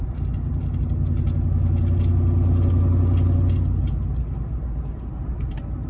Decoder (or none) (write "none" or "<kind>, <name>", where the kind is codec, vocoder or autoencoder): none